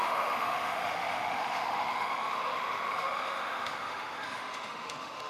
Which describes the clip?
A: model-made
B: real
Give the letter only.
A